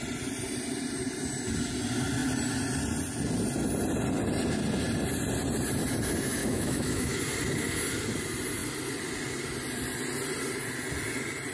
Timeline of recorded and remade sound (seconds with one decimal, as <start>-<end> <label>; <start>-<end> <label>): 0.0-6.4 recorded; 6.4-7.2 remade; 7.2-11.5 recorded